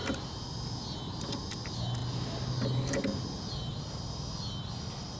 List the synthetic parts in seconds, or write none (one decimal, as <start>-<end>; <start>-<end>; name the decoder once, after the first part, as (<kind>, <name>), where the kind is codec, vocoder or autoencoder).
none